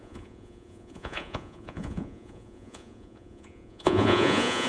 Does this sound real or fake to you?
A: fake